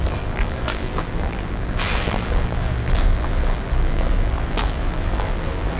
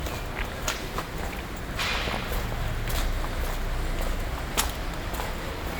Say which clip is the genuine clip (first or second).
second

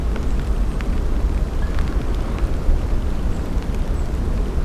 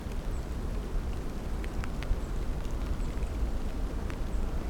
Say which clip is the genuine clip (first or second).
first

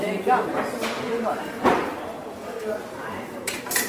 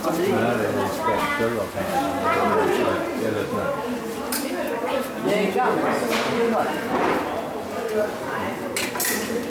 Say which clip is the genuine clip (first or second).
second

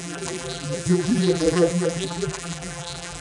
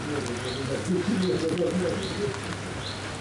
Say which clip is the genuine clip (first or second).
second